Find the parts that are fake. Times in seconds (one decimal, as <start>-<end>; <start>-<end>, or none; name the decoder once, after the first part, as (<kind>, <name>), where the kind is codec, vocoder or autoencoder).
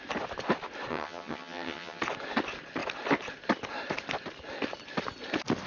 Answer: 0.9-2.0 (vocoder, HiFi-GAN)